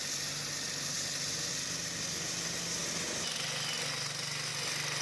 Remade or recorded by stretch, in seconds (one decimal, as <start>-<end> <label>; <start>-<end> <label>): 0.0-5.0 recorded